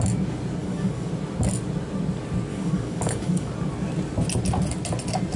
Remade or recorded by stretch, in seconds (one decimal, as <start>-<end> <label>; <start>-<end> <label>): 0.0-0.6 recorded; 0.6-1.1 remade; 1.1-2.5 recorded; 2.5-3.5 remade; 3.5-5.4 recorded